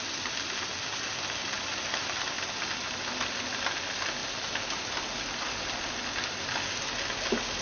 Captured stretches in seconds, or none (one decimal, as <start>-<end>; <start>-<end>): 0.0-7.6